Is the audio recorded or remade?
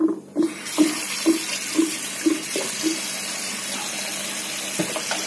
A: recorded